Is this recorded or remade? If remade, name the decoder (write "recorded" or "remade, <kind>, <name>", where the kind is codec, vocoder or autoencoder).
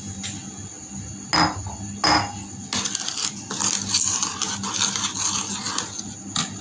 recorded